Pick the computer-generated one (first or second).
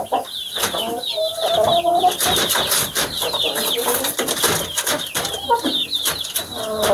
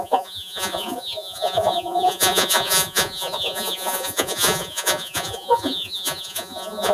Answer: second